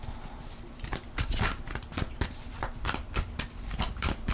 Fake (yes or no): yes